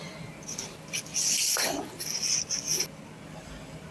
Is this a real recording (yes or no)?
yes